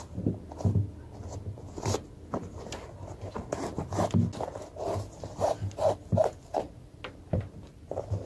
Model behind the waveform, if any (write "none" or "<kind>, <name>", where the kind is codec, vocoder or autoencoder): none